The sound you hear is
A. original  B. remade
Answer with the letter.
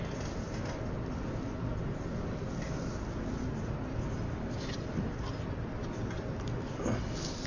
A